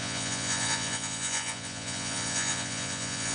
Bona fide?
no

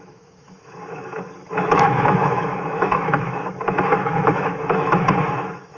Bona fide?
no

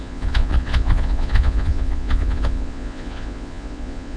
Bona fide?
no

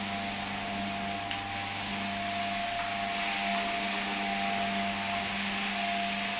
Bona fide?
yes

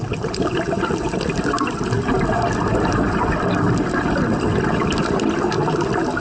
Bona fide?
yes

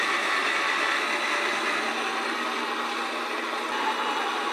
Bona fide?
yes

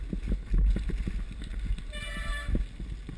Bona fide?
yes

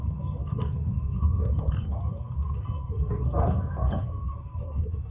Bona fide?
no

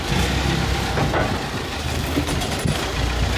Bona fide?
yes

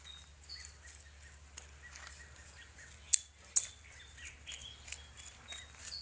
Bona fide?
yes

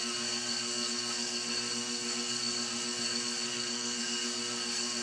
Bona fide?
no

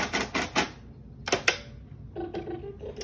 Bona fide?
yes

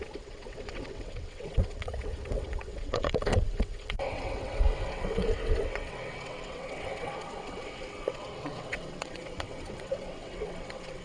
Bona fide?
no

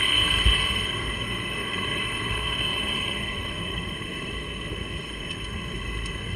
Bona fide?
no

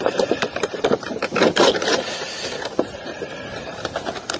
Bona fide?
no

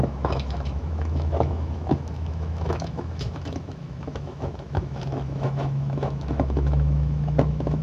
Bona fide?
no